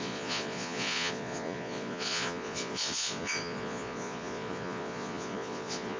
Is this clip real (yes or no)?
no